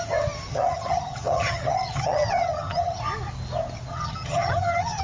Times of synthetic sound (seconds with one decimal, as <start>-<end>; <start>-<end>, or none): 0.5-3.0; 3.9-5.0